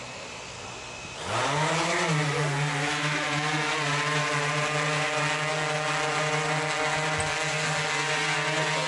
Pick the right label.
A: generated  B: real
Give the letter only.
B